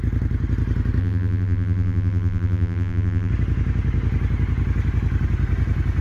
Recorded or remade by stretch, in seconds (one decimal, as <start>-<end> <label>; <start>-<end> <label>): 0.0-1.0 recorded; 1.0-3.3 remade; 3.3-6.0 recorded